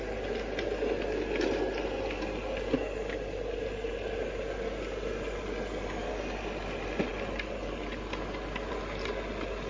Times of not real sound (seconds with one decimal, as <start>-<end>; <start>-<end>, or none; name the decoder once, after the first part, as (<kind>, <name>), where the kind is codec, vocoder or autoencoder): none